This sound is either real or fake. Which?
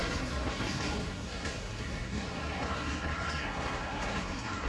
fake